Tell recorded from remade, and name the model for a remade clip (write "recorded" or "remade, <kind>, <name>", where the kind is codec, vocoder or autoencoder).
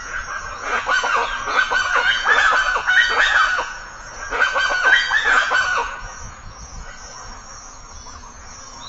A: remade, vocoder, Vocos